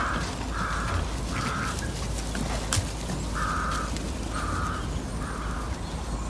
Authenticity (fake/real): real